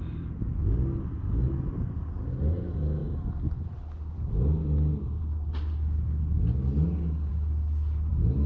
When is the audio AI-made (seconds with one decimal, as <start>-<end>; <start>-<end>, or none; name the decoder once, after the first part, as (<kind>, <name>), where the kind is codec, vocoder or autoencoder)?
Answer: none